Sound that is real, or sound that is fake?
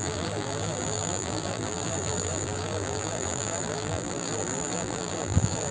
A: fake